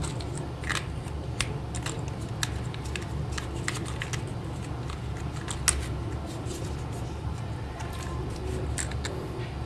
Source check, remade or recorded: recorded